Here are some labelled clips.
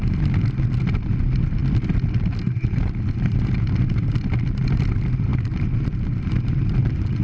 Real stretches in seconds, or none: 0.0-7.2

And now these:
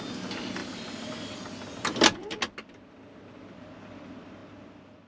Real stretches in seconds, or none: 0.0-5.1

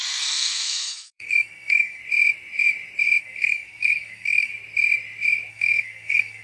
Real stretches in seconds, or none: 2.0-3.2; 4.5-5.5

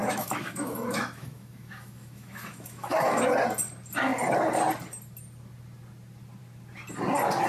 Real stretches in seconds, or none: 3.2-7.5